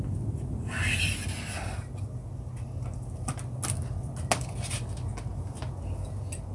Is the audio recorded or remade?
recorded